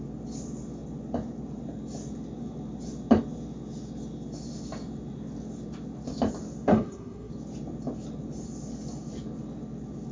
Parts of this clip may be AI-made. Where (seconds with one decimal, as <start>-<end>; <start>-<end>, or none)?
6.7-7.3